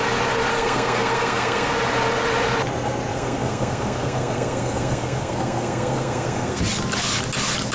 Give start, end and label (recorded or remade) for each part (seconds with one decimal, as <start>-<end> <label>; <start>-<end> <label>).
0.0-0.5 recorded; 0.5-1.7 remade; 1.7-3.1 recorded; 3.1-6.6 remade; 6.6-7.7 recorded